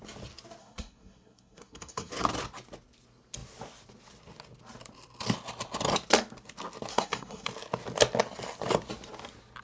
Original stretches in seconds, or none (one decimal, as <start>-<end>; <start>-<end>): 0.0-0.6; 2.1-6.9; 7.5-9.6